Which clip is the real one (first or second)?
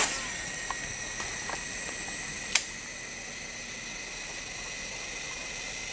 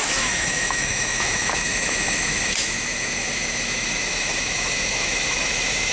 first